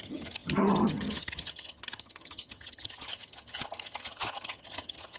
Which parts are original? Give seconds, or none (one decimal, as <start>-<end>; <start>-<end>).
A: none